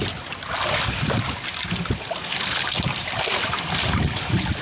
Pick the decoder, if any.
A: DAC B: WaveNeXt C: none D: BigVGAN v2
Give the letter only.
C